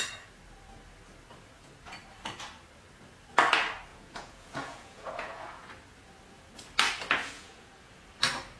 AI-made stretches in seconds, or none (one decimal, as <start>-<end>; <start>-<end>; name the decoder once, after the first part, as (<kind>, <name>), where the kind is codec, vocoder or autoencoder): 3.9-5.7 (vocoder, Vocos); 7.2-7.9